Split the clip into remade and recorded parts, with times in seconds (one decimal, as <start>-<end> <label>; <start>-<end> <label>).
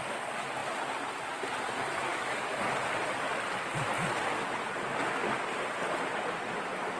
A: 0.0-2.1 recorded; 2.1-2.7 remade; 2.7-7.0 recorded